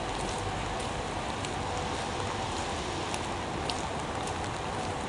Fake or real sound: real